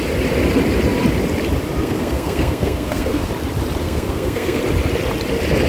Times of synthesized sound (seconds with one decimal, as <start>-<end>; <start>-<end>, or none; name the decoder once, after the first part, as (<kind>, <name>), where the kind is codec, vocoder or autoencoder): 1.8-3.3 (codec, SNAC); 3.8-4.6

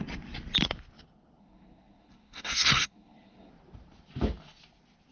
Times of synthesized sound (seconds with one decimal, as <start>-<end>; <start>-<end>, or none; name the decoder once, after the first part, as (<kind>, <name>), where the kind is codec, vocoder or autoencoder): 1.4-3.5 (codec, SNAC)